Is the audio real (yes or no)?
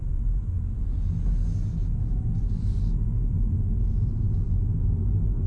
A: yes